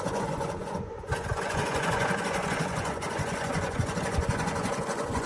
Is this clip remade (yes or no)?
yes